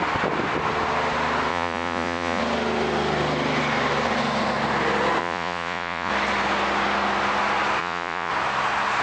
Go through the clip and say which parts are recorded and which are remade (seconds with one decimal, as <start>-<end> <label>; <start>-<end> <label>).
0.0-1.5 recorded; 1.5-2.4 remade; 2.4-5.2 recorded; 5.2-6.1 remade; 6.1-7.8 recorded; 7.8-8.3 remade; 8.3-9.0 recorded